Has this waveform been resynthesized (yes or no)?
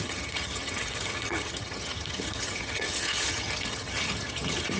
yes